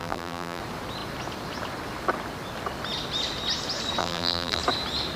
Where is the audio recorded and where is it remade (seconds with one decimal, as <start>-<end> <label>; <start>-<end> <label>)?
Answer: 0.0-0.6 remade; 0.6-4.0 recorded; 4.0-4.6 remade; 4.6-5.2 recorded